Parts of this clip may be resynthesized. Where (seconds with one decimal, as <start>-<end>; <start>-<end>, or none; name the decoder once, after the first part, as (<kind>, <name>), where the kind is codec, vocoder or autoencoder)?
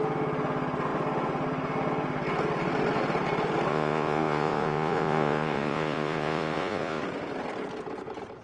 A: 3.7-7.0 (vocoder, Vocos)